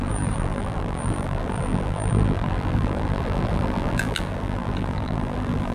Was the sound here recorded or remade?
remade